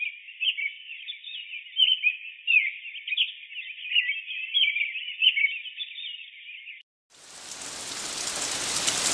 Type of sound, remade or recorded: recorded